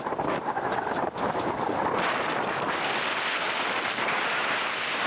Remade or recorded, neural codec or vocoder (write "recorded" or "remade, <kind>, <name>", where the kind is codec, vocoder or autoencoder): recorded